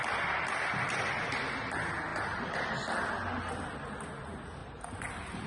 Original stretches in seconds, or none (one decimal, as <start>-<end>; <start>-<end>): 0.0-2.1; 2.7-4.6